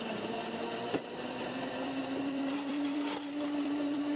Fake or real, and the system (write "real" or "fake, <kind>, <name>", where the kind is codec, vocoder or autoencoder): fake, vocoder, BigVGAN v2